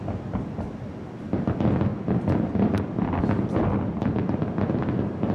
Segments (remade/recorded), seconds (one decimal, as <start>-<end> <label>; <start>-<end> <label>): 0.0-5.3 recorded